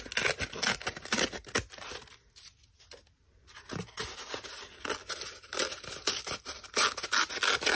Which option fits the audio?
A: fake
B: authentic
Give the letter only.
B